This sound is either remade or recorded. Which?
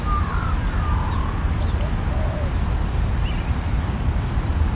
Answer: recorded